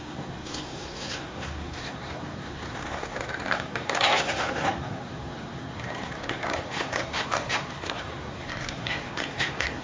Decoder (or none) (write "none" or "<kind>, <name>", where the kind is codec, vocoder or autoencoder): codec, SNAC